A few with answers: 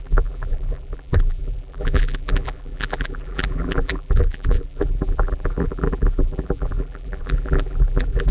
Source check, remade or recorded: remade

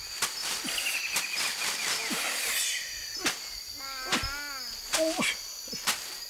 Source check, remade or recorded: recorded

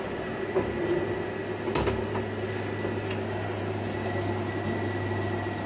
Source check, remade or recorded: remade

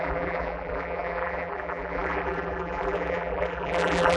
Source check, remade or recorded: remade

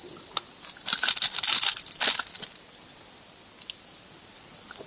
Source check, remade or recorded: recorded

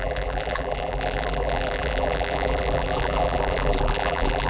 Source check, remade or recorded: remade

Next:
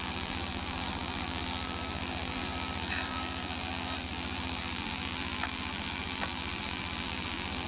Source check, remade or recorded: remade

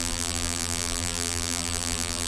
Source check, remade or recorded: remade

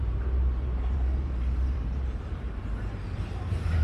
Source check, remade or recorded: remade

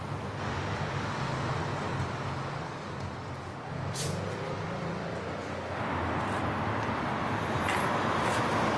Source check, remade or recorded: recorded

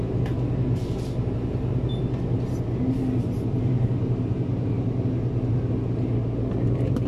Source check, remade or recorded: recorded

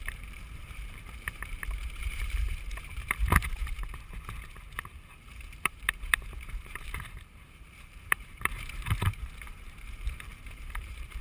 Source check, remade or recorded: remade